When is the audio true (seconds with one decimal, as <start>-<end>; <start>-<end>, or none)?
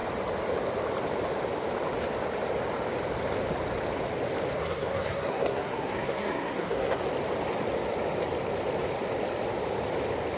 0.0-4.6; 7.0-10.4